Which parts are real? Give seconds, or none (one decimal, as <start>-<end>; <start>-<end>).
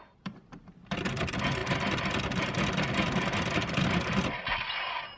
0.0-5.2